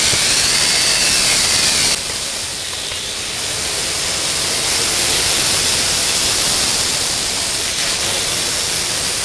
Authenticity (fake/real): real